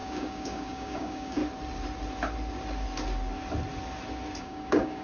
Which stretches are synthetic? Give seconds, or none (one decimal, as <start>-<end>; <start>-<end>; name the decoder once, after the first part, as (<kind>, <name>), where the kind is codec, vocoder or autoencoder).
0.0-1.4 (codec, DAC); 4.4-5.0